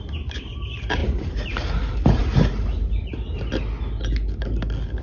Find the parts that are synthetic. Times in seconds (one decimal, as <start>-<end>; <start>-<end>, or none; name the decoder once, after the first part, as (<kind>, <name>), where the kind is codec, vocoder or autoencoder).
1.0-1.7 (vocoder, BigVGAN v2)